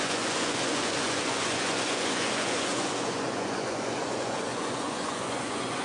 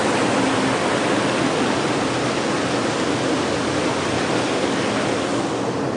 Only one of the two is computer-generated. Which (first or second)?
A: first